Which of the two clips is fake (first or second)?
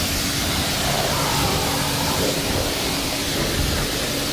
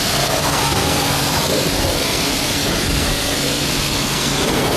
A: second